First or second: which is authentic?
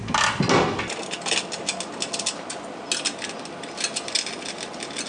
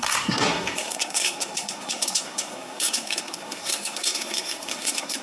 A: first